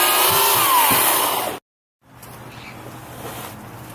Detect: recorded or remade recorded